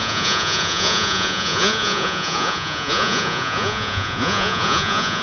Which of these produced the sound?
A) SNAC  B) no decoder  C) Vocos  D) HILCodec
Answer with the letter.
C